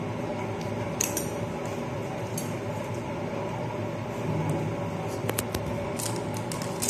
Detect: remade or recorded recorded